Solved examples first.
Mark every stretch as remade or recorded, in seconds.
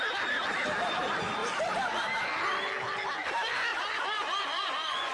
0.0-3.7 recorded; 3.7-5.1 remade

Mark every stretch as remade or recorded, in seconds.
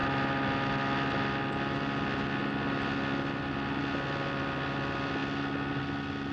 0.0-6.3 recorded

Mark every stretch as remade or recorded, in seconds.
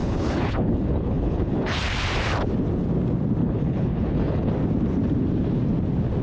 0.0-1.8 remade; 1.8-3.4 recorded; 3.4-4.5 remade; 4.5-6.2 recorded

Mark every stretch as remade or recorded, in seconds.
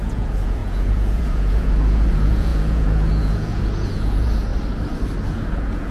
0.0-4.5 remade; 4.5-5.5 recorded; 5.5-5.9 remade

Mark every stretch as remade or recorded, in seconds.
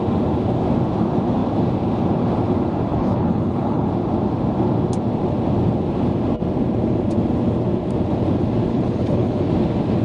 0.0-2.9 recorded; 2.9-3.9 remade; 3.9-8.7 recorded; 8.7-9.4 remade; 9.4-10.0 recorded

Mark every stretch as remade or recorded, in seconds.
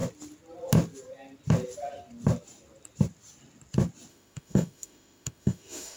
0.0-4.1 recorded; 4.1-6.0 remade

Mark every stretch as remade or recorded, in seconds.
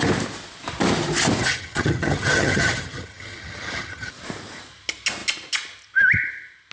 0.0-1.4 recorded; 1.4-4.1 remade; 4.1-6.7 recorded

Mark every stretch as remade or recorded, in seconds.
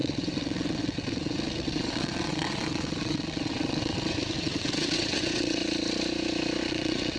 0.0-5.6 remade; 5.6-6.7 recorded; 6.7-7.2 remade